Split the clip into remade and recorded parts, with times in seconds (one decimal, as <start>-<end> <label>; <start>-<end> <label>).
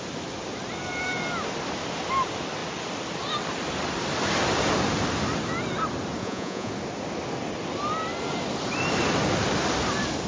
0.0-6.2 recorded; 6.2-6.7 remade; 6.7-10.3 recorded